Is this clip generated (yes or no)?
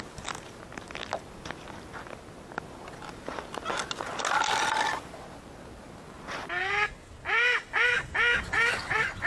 no